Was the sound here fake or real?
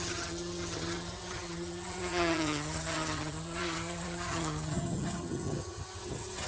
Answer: fake